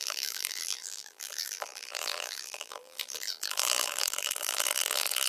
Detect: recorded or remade remade